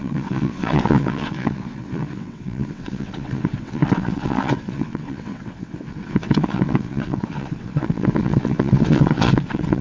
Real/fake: fake